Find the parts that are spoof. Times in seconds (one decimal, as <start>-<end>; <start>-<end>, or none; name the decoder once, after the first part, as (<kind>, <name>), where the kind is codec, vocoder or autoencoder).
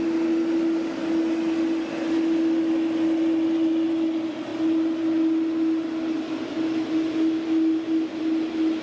none